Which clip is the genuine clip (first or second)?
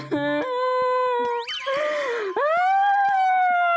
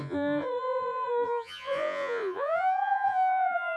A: first